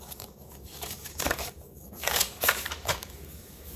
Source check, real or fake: fake